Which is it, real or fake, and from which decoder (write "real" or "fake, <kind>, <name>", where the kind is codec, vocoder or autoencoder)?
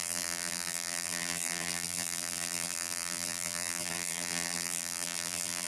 fake, vocoder, BigVGAN v2